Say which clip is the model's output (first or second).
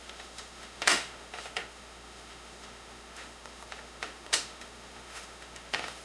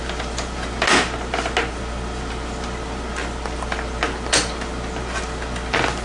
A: first